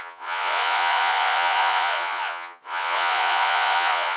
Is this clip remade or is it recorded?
remade